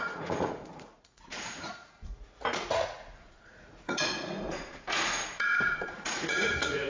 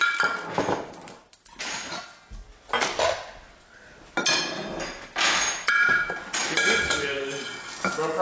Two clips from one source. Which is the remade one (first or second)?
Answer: first